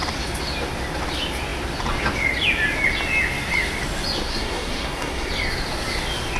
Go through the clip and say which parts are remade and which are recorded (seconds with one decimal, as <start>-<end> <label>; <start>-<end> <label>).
0.0-4.3 recorded; 4.3-5.3 remade; 5.3-6.4 recorded

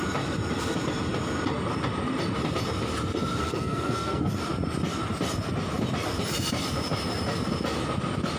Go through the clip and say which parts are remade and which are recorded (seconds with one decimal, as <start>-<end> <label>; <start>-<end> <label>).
0.0-3.4 recorded; 3.4-4.3 remade; 4.3-8.4 recorded

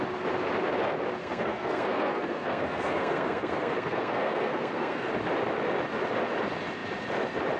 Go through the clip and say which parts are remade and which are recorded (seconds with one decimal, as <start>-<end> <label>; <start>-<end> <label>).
0.0-1.2 recorded; 1.2-5.1 remade; 5.1-7.6 recorded

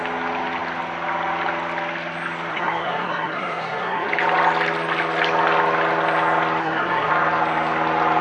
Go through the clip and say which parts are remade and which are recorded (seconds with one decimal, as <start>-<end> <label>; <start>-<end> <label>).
0.0-2.5 recorded; 2.5-4.1 remade; 4.1-6.6 recorded; 6.6-7.1 remade; 7.1-8.2 recorded

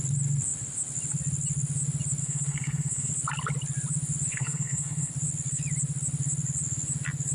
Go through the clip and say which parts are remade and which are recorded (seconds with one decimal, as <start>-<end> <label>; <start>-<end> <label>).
0.0-2.2 recorded; 2.2-3.1 remade; 3.1-4.3 recorded; 4.3-5.1 remade; 5.1-7.3 recorded

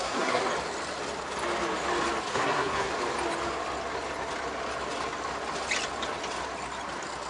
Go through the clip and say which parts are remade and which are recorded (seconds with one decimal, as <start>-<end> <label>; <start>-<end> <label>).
0.0-0.4 remade; 0.4-2.3 recorded; 2.3-2.9 remade; 2.9-7.3 recorded

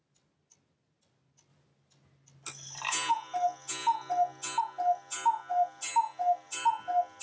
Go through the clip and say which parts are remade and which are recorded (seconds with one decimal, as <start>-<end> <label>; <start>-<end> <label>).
0.0-7.2 recorded

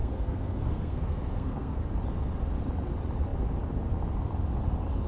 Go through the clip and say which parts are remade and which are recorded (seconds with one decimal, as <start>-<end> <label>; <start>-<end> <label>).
0.0-1.8 remade; 1.8-5.1 recorded